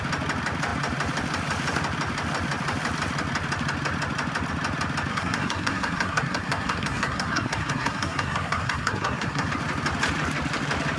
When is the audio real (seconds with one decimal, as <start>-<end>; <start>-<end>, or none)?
0.0-5.1; 9.5-11.0